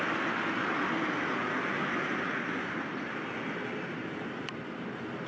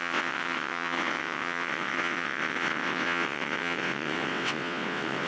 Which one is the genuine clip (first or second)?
first